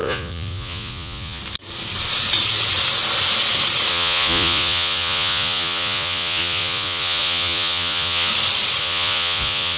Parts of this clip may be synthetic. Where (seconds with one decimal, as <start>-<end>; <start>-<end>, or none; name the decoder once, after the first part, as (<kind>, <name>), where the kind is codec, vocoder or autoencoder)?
0.0-1.4 (vocoder, Vocos); 3.9-8.3; 8.8-9.8